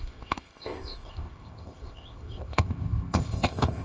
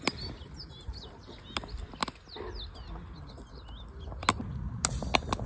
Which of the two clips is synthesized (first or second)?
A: first